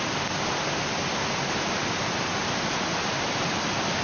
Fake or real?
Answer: real